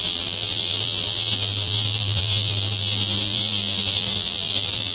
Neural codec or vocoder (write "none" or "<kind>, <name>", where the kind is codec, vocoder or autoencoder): vocoder, BigVGAN v2